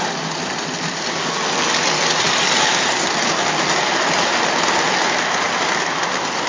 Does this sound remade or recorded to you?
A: recorded